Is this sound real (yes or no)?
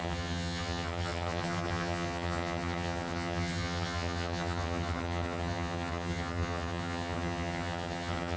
no